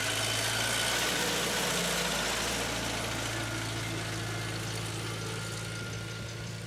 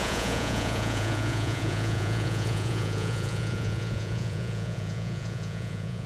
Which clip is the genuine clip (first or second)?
first